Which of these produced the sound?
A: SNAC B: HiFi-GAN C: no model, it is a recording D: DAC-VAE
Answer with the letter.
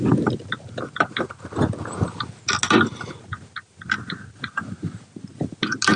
C